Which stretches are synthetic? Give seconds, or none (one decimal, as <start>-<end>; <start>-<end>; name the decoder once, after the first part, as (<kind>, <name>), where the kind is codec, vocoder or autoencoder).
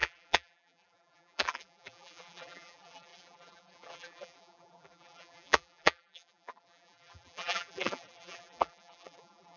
0.0-9.6 (vocoder, BigVGAN v2)